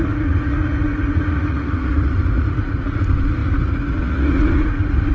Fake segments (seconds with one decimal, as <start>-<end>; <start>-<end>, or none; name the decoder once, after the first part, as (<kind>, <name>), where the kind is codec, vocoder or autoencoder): 0.0-5.1 (vocoder, Vocos)